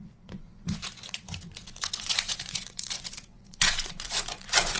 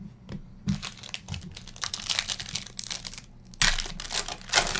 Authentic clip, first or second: second